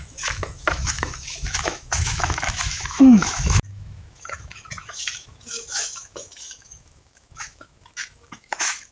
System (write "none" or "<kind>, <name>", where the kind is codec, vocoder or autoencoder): autoencoder, DAC-VAE